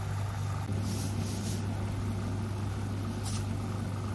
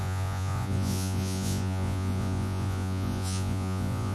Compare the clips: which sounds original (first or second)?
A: first